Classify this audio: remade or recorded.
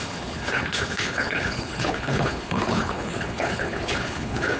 remade